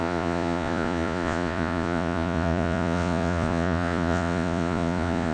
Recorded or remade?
remade